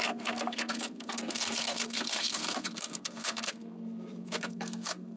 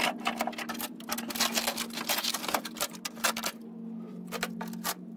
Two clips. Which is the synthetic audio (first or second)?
first